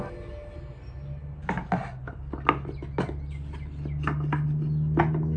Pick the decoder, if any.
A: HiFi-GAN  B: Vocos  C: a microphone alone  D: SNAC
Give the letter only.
C